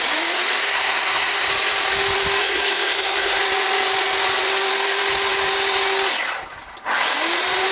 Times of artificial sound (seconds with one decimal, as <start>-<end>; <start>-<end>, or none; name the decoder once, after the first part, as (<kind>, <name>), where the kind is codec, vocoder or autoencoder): 0.6-1.5 (codec, SNAC); 2.4-3.4